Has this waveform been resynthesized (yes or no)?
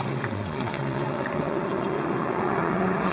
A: yes